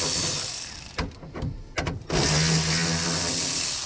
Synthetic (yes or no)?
no